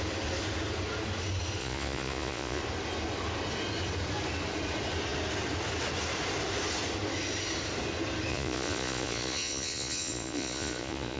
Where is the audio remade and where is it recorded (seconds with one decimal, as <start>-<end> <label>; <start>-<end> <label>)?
0.0-1.6 recorded; 1.6-2.6 remade; 2.6-8.3 recorded; 8.3-11.2 remade